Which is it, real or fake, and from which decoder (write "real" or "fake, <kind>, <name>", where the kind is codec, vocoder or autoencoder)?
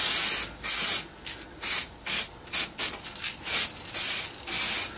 real